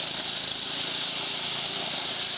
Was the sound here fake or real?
real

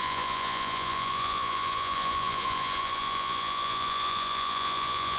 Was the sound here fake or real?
fake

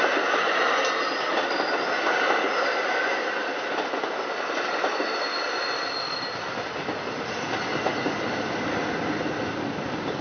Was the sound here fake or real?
real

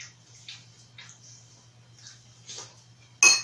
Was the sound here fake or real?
real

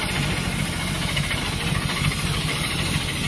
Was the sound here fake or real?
real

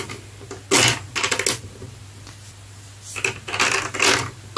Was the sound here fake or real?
real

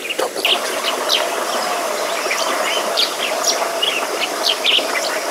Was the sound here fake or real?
real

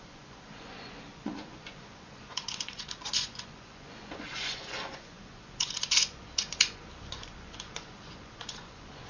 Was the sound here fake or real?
fake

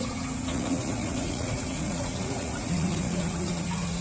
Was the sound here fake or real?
fake